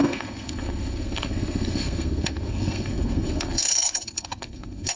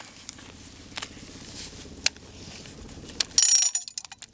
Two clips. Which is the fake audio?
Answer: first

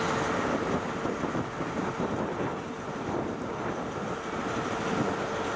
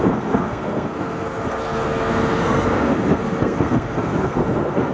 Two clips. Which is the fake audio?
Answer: second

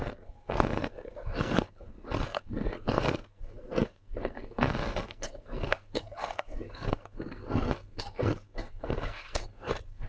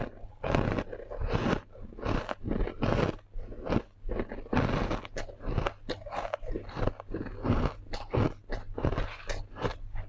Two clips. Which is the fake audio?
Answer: first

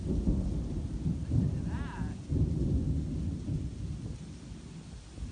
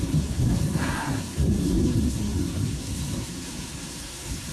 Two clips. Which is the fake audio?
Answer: second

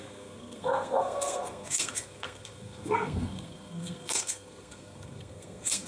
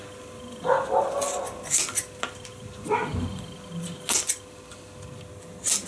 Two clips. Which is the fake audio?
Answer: first